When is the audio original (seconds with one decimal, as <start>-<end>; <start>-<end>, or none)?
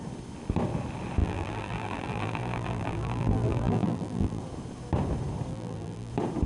0.0-1.2; 4.4-5.5; 6.1-6.5